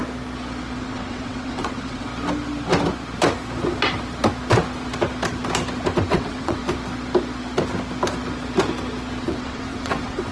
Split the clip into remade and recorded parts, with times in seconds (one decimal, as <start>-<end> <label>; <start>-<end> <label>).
0.0-0.8 recorded; 0.8-2.1 remade; 2.1-6.1 recorded; 6.1-6.6 remade; 6.6-9.2 recorded; 9.2-10.3 remade